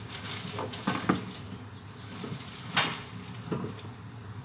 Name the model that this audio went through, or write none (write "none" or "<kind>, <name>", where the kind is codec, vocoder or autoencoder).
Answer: none